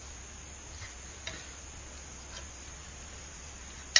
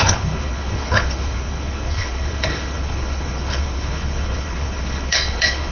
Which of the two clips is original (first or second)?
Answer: first